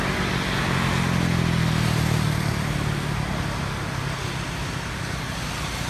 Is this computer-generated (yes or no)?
no